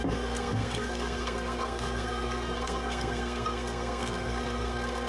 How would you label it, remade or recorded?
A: remade